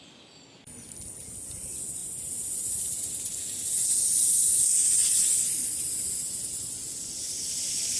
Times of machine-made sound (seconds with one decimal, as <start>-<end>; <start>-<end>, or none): none